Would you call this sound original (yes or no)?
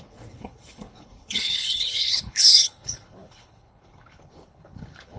no